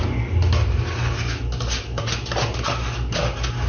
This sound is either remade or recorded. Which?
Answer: recorded